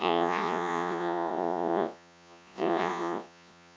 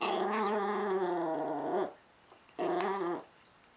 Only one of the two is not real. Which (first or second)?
first